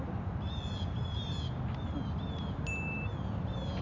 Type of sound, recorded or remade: recorded